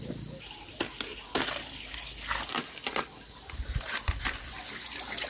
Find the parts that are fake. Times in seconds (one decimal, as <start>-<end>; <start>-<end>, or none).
none